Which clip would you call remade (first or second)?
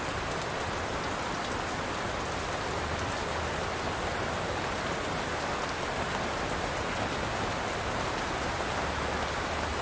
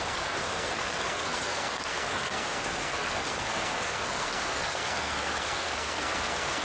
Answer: second